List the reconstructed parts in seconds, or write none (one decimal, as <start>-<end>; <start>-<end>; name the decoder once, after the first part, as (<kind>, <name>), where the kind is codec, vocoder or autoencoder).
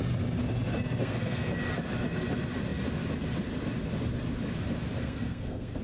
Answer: 1.0-1.5 (codec, SNAC); 5.0-5.8